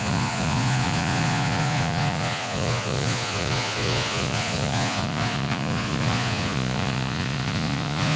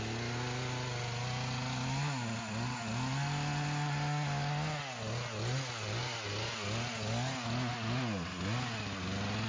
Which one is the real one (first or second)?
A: second